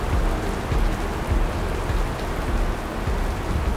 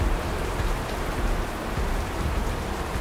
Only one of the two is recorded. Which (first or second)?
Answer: first